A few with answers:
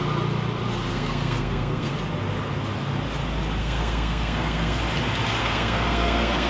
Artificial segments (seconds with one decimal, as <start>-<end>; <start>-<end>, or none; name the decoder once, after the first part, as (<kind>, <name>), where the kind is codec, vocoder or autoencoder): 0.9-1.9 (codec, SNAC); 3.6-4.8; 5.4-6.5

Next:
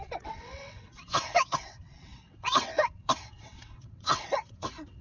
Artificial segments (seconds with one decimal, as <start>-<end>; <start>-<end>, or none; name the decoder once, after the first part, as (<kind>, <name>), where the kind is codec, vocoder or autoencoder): 0.0-5.0 (vocoder, WaveNeXt)

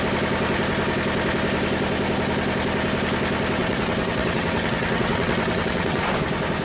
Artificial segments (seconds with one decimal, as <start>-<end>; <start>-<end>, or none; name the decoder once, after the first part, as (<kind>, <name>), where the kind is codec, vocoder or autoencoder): 3.6-6.0 (vocoder, WaveNeXt)

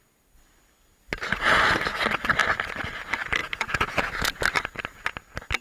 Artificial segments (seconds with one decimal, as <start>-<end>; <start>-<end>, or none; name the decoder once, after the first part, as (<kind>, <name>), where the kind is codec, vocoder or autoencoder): 3.4-4.4 (vocoder, Vocos)